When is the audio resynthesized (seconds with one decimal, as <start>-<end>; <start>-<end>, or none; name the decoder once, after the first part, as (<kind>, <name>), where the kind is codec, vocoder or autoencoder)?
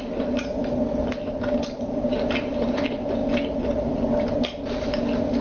none